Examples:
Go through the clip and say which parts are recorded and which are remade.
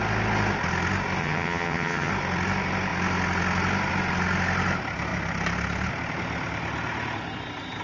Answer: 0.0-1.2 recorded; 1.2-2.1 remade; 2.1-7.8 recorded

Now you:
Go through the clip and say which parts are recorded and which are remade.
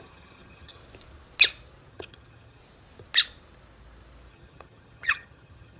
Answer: 0.0-0.8 remade; 0.8-1.9 recorded; 1.9-2.6 remade; 2.6-4.3 recorded; 4.3-5.8 remade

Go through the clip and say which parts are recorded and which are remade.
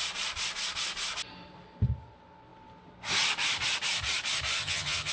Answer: 0.0-4.6 recorded; 4.6-5.1 remade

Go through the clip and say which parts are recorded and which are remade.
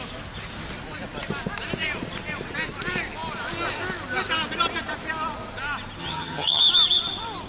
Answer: 0.0-6.0 recorded; 6.0-6.6 remade; 6.6-7.5 recorded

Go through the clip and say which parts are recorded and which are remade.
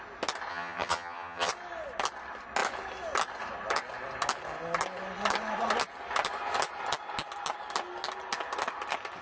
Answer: 0.0-0.5 recorded; 0.5-1.5 remade; 1.5-9.2 recorded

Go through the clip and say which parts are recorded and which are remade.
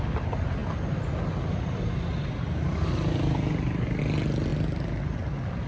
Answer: 0.0-5.7 recorded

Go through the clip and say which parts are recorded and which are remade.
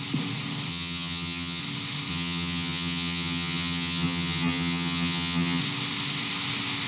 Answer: 0.0-0.7 recorded; 0.7-1.6 remade; 1.6-2.1 recorded; 2.1-5.6 remade; 5.6-6.9 recorded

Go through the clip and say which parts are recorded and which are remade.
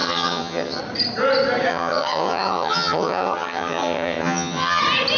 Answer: 0.0-0.8 remade; 0.8-1.7 recorded; 1.7-4.8 remade; 4.8-5.2 recorded